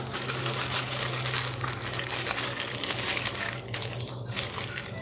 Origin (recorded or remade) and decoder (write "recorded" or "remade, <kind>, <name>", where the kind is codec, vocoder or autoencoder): remade, codec, DAC